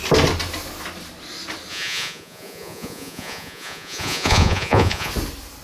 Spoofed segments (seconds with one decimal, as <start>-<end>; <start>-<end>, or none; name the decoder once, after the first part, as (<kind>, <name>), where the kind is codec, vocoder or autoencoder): 1.7-5.1 (vocoder, Vocos)